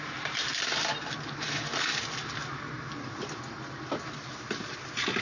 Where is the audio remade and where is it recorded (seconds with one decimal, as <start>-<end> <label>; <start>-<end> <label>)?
0.0-5.2 recorded